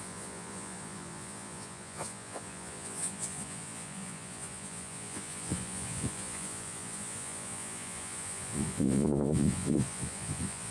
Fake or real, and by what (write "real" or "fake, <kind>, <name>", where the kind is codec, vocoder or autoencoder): fake, vocoder, Vocos